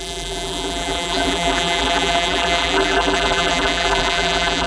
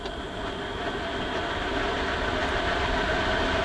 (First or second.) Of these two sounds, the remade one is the first